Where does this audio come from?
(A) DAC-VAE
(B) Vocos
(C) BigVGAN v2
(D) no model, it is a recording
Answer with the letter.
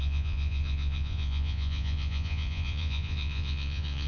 B